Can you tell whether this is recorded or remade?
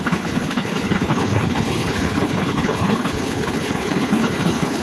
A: remade